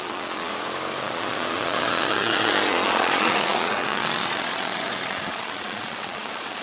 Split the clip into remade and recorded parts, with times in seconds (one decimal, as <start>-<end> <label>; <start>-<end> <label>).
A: 0.0-0.5 remade; 0.5-1.0 recorded; 1.0-6.6 remade